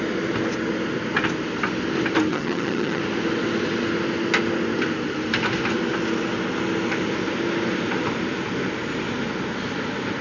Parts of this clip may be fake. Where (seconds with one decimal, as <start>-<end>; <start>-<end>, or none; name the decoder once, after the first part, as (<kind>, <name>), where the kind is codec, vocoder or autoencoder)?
2.3-3.0 (vocoder, HiFi-GAN)